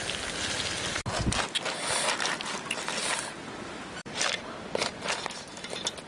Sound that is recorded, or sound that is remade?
recorded